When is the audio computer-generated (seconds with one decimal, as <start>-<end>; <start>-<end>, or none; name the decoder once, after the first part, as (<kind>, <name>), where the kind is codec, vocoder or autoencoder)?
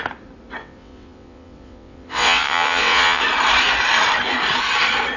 0.6-3.2 (vocoder, WaveNeXt)